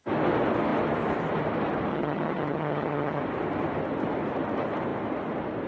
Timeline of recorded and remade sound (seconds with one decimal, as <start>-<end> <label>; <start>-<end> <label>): 0.0-1.9 recorded; 1.9-3.2 remade; 3.2-5.7 recorded